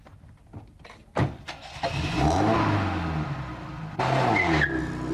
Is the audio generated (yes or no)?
no